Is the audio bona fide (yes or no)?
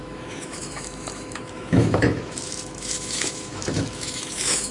no